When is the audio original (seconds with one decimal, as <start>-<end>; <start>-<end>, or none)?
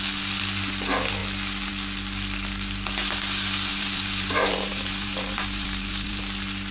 0.0-3.7; 6.2-6.7